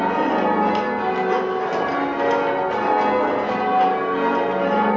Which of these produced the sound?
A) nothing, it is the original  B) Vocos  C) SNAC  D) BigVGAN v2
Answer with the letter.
A